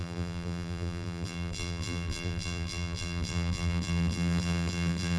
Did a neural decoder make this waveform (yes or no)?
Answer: yes